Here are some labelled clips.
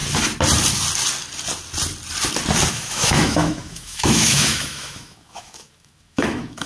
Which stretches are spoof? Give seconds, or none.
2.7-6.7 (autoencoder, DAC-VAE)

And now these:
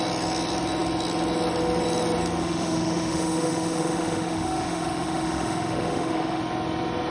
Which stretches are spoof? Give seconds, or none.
2.4-6.4 (autoencoder, DAC-VAE)

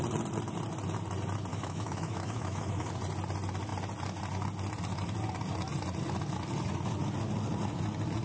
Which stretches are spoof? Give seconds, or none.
1.5-2.9 (autoencoder, DAC-VAE)

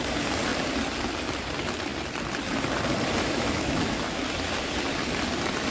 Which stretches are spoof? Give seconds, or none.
3.2-4.2 (autoencoder, DAC-VAE)

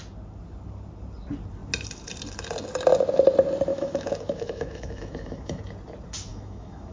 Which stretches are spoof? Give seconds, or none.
3.7-5.6 (autoencoder, DAC-VAE); 6.3-6.9

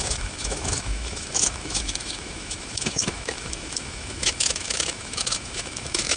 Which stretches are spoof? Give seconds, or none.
0.0-6.2 (autoencoder, DAC-VAE)

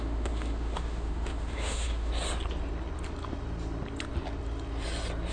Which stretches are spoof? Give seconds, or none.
0.0-2.1 (autoencoder, DAC-VAE)

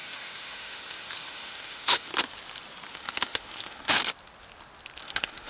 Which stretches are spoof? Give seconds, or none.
0.0-2.1 (autoencoder, DAC-VAE); 2.9-4.0; 5.0-5.5